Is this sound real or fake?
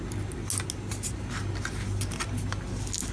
real